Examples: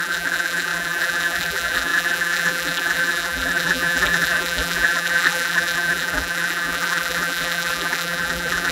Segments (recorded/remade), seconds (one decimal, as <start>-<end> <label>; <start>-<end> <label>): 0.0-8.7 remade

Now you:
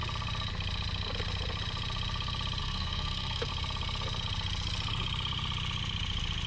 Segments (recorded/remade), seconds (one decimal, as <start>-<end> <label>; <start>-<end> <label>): 0.0-2.6 recorded; 2.6-3.5 remade; 3.5-6.5 recorded

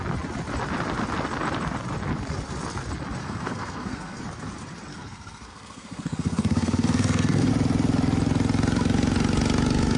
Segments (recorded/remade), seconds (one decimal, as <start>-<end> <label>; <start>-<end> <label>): 0.0-3.2 recorded; 3.2-4.2 remade; 4.2-4.9 recorded; 4.9-7.5 remade; 7.5-10.0 recorded

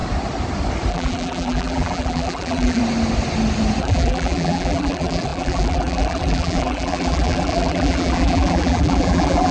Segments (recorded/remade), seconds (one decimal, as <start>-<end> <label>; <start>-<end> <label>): 0.0-0.9 recorded; 0.9-2.8 remade; 2.8-3.8 recorded; 3.8-9.5 remade

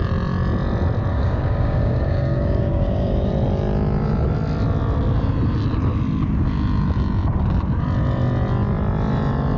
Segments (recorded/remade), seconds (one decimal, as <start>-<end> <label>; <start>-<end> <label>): 0.0-1.1 recorded; 1.1-3.3 remade; 3.3-9.6 recorded